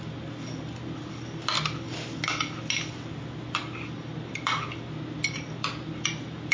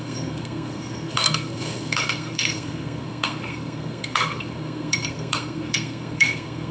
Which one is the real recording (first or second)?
first